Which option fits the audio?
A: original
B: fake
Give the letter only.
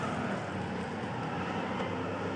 A